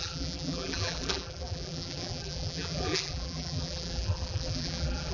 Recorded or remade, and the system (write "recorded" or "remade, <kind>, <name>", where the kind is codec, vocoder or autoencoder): remade, vocoder, BigVGAN v2